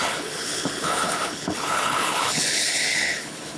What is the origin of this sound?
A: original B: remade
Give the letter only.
B